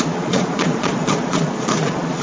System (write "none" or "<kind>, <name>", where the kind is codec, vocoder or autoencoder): vocoder, Vocos